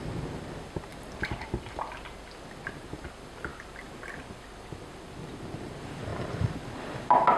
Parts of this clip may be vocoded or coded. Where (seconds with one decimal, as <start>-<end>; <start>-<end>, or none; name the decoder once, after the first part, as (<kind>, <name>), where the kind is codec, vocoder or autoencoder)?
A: 0.9-1.4 (vocoder, BigVGAN v2); 6.1-6.6